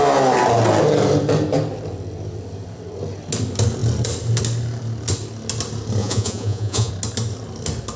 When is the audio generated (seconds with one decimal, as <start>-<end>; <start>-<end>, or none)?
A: 6.0-6.9